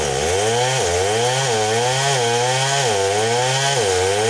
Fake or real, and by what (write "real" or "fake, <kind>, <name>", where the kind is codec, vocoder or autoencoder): real